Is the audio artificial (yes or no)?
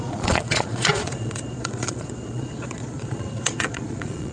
yes